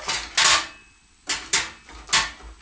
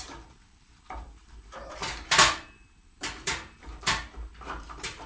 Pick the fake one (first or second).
second